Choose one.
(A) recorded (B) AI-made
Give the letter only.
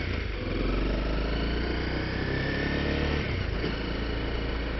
A